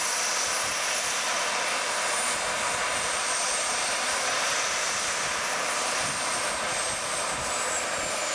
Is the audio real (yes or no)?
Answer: no